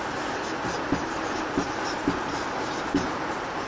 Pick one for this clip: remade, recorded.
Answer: recorded